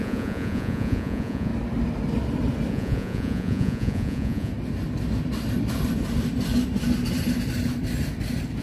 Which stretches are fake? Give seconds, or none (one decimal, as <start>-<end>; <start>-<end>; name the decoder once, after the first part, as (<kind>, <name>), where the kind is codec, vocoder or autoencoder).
0.0-1.5 (vocoder, Vocos); 2.7-4.5